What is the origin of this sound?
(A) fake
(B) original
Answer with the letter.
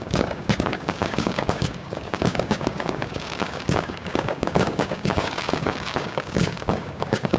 A